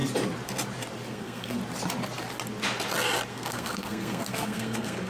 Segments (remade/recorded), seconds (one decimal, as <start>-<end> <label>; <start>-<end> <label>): 0.0-1.1 recorded; 1.1-1.6 remade; 1.6-3.3 recorded; 3.3-5.1 remade